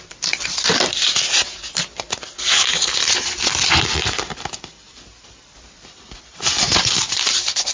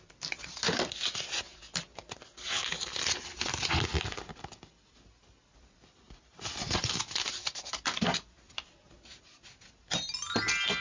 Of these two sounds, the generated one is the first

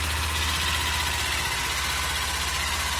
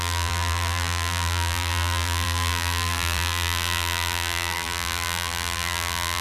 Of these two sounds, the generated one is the second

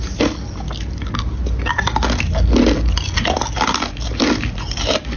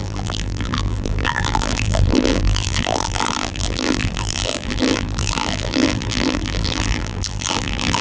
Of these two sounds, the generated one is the second